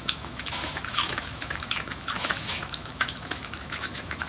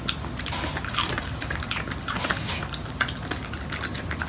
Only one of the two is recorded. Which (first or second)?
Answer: second